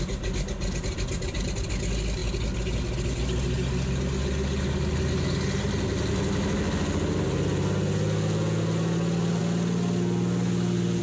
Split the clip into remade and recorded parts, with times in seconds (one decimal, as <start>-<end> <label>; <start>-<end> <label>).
0.0-11.0 recorded